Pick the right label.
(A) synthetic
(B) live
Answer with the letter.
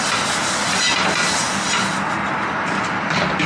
B